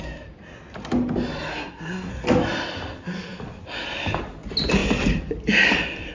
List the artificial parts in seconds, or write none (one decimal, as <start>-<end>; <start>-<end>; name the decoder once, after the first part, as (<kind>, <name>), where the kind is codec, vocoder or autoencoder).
1.5-2.1 (codec, SNAC)